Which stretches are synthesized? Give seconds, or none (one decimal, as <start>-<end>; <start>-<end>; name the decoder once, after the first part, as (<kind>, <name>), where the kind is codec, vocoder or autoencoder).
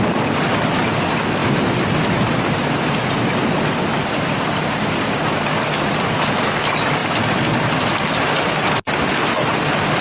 1.4-5.0 (vocoder, BigVGAN v2)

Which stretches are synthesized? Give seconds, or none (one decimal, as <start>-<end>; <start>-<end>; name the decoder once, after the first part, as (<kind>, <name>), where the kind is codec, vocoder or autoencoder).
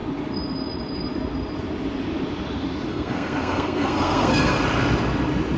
2.9-4.6 (codec, SNAC)